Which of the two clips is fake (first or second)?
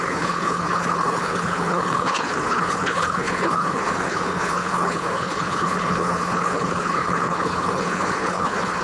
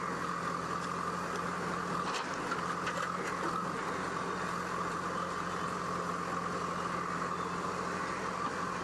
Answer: first